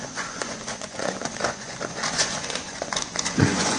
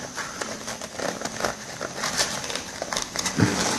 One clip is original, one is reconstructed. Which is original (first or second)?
second